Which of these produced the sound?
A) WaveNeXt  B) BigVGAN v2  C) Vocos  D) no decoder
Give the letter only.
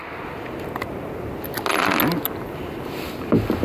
D